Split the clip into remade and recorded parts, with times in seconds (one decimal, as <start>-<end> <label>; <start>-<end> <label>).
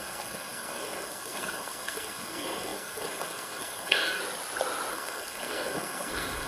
0.0-4.2 remade; 4.2-4.9 recorded; 4.9-6.5 remade